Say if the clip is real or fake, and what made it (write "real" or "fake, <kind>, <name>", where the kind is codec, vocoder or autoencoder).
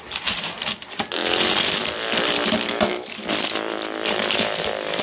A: fake, vocoder, BigVGAN v2